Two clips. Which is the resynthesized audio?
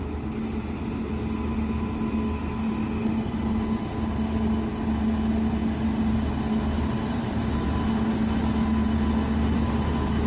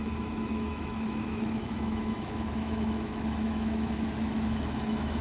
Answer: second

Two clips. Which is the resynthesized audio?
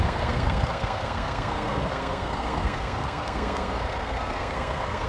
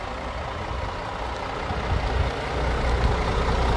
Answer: first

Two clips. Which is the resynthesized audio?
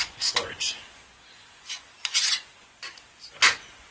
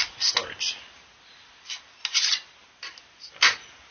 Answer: first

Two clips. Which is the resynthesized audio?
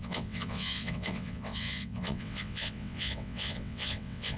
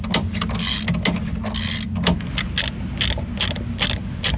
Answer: first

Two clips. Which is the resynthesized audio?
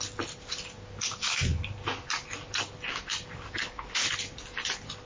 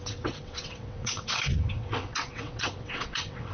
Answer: second